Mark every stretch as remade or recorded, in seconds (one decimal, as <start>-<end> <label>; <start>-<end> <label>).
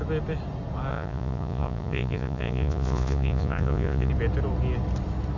0.0-0.9 recorded; 0.9-4.1 remade; 4.1-5.4 recorded